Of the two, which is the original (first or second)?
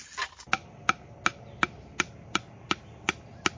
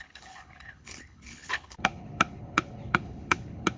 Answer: first